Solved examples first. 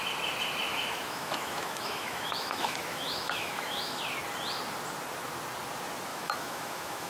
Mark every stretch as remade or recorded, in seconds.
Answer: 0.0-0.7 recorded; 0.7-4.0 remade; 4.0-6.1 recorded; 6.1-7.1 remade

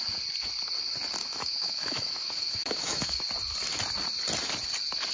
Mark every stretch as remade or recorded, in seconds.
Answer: 0.0-1.2 recorded; 1.2-3.2 remade; 3.2-5.1 recorded

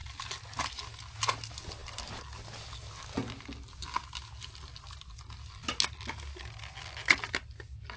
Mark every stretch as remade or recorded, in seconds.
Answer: 0.0-8.0 recorded

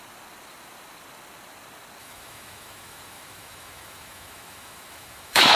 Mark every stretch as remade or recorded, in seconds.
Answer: 0.0-2.0 recorded; 2.0-5.6 remade

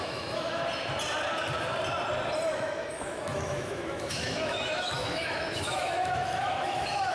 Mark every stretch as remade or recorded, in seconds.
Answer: 0.0-0.6 remade; 0.6-2.5 recorded; 2.5-7.1 remade

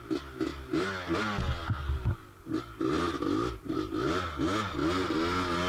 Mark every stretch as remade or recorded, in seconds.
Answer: 0.0-5.7 recorded

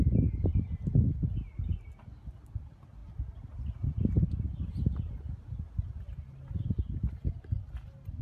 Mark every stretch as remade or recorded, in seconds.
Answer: 0.0-8.2 recorded

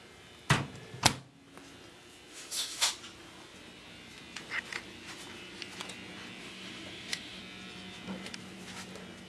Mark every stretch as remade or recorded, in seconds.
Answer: 0.0-2.3 recorded; 2.3-2.9 remade; 2.9-6.4 recorded; 6.4-7.4 remade; 7.4-9.3 recorded